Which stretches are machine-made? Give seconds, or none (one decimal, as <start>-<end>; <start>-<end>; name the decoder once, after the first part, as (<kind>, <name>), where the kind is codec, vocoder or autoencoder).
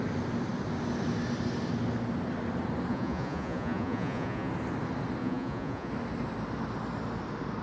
2.9-4.5 (vocoder, Vocos); 5.2-5.9